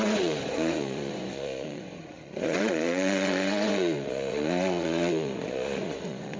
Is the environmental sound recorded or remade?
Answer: remade